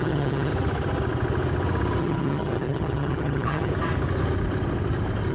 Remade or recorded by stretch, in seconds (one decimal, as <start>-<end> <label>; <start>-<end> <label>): 0.0-0.5 remade; 0.5-2.0 recorded; 2.0-3.7 remade; 3.7-5.3 recorded